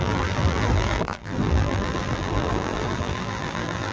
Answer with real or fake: fake